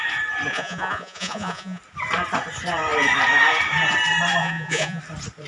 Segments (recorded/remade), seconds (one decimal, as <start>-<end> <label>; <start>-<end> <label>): 0.0-0.5 recorded; 0.5-1.8 remade; 1.8-4.4 recorded; 4.4-5.0 remade; 5.0-5.5 recorded